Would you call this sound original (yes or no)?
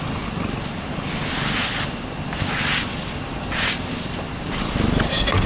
yes